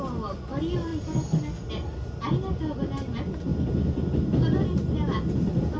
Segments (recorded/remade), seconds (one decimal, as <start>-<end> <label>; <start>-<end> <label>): 0.0-5.8 recorded